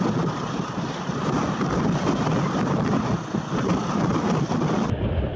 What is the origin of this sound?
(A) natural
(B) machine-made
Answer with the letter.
A